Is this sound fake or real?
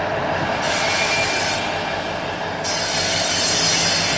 real